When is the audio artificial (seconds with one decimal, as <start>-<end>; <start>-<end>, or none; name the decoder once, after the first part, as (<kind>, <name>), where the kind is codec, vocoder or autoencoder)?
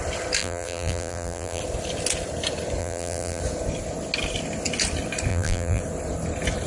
0.4-1.6 (vocoder, BigVGAN v2); 2.8-3.4; 5.3-5.8